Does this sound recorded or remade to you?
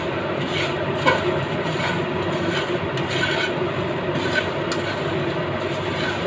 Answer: recorded